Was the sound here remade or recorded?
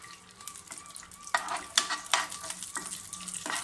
recorded